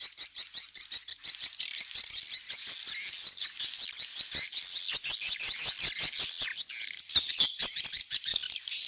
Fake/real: real